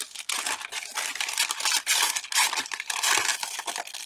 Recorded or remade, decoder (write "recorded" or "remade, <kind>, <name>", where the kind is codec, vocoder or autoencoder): recorded